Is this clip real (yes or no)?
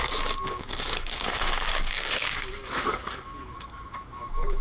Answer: no